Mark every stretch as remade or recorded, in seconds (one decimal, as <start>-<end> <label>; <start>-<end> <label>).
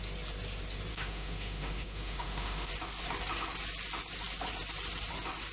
0.0-0.9 recorded; 0.9-2.7 remade; 2.7-5.5 recorded